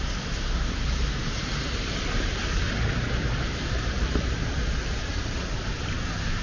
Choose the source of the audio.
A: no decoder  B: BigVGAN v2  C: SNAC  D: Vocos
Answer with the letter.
B